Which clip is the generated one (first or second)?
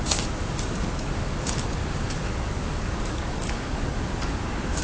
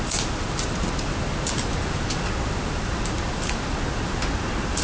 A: first